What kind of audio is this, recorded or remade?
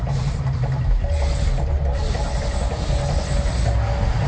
recorded